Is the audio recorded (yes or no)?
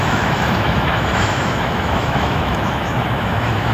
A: no